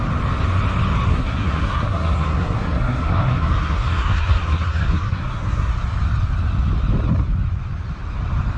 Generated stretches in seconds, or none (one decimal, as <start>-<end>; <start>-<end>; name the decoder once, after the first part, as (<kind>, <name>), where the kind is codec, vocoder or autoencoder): 1.1-5.7 (codec, SNAC)